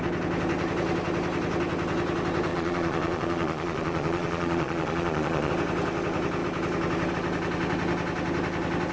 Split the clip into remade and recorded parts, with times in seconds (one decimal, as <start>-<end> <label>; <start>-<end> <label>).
0.0-2.5 recorded; 2.5-5.5 remade; 5.5-8.9 recorded